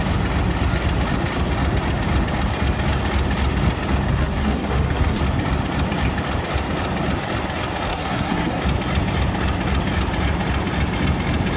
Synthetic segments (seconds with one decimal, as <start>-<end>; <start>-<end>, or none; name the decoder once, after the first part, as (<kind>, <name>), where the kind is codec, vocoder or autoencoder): 4.1-5.2 (codec, SNAC); 7.9-8.6